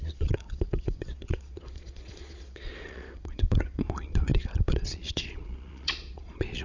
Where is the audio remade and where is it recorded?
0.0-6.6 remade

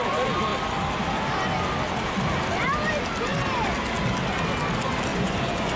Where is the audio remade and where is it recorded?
0.0-5.1 recorded; 5.1-5.8 remade

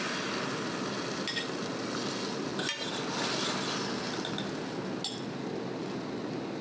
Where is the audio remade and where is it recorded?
0.0-6.6 recorded

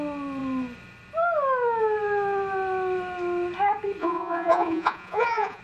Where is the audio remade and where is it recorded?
0.0-4.0 recorded; 4.0-5.6 remade